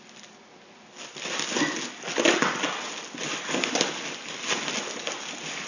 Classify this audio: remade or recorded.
recorded